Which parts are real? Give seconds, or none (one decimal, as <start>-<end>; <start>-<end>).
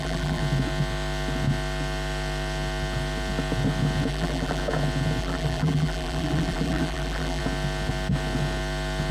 0.4-4.1; 4.6-5.2; 7.4-9.1